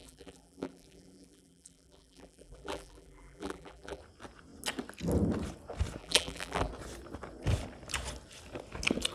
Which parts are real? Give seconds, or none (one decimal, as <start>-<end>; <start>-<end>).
4.0-6.0; 6.7-9.1